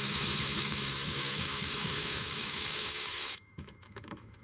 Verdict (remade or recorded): remade